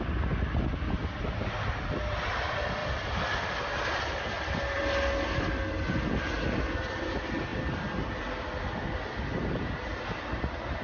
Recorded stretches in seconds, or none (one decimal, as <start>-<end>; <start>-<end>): 0.0-2.8; 4.0-10.8